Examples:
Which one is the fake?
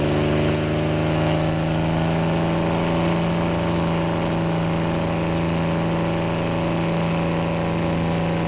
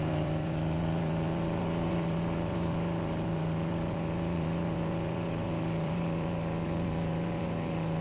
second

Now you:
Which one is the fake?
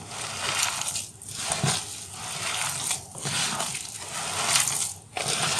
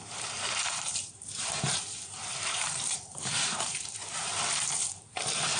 second